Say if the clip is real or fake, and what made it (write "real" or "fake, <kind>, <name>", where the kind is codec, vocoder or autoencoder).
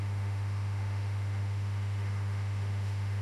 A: fake, autoencoder, DAC-VAE